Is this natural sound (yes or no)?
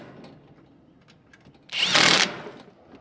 yes